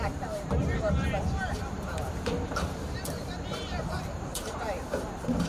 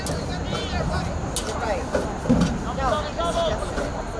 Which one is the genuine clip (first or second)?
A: second